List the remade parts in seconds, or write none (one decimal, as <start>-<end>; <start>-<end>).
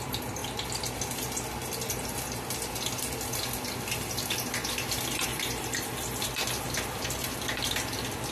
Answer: none